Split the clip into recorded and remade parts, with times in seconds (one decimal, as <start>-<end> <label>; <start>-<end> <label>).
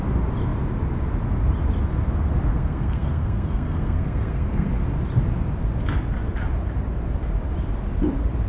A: 0.0-2.5 recorded; 2.5-4.7 remade; 4.7-8.5 recorded